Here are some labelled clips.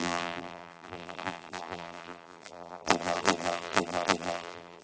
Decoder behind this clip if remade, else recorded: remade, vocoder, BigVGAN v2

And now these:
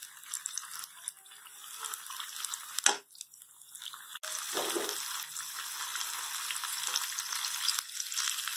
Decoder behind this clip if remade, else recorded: recorded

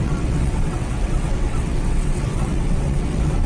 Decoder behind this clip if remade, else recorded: remade, vocoder, WaveNeXt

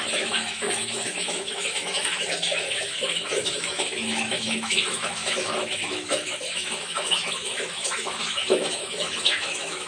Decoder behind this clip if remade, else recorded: remade, autoencoder, DAC-VAE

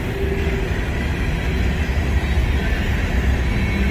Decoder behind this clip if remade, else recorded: recorded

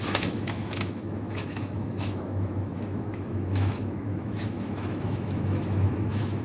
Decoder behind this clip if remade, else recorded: remade, autoencoder, DAC-VAE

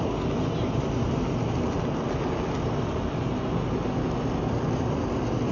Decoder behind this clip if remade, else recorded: recorded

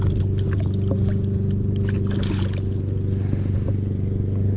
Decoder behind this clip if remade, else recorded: recorded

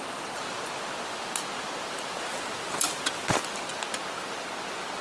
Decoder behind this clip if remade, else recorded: recorded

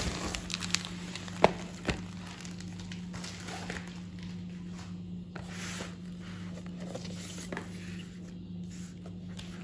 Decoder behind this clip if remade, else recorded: recorded